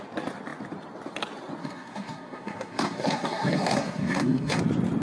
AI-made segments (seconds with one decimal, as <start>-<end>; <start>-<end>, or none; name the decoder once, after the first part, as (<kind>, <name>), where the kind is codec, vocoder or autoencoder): 1.6-4.6 (codec, SNAC)